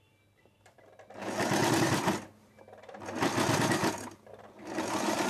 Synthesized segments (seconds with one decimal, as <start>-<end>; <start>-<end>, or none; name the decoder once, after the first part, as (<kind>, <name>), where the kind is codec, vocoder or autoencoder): none